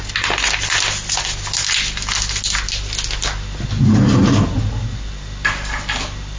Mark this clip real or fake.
real